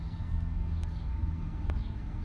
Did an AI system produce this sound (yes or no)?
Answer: yes